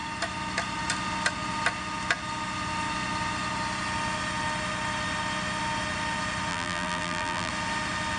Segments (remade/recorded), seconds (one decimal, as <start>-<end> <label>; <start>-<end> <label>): 0.0-6.5 recorded; 6.5-7.5 remade; 7.5-8.2 recorded